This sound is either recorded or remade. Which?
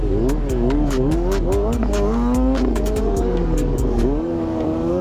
remade